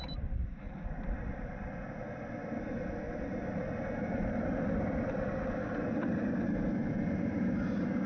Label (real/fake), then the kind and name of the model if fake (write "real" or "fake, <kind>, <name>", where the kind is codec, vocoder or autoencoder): real